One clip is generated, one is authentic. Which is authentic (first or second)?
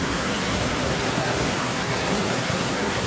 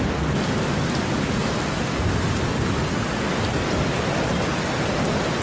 second